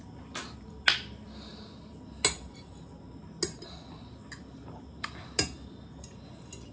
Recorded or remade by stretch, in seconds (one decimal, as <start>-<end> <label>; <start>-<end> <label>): 0.0-6.7 recorded